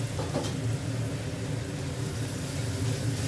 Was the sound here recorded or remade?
recorded